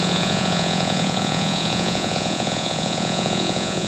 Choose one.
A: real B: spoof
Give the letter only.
B